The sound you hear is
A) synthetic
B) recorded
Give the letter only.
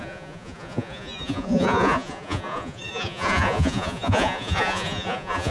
A